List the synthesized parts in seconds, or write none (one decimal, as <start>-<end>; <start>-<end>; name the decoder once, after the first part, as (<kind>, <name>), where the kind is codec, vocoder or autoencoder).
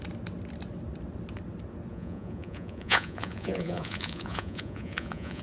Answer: 1.9-5.4 (vocoder, Vocos)